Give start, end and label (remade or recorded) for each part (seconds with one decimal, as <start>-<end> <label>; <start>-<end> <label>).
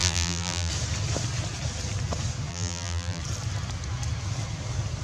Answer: 0.0-0.7 remade; 0.7-2.5 recorded; 2.5-3.2 remade; 3.2-5.0 recorded